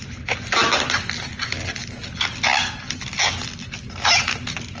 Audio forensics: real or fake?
real